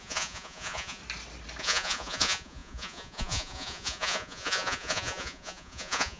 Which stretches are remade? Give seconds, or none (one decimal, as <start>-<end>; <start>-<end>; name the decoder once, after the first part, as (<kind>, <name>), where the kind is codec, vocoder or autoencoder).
0.0-1.0 (vocoder, Vocos); 1.6-6.2